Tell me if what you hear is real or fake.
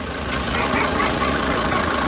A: fake